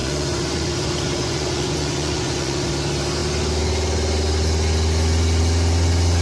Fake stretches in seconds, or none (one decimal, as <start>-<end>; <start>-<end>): 0.0-2.7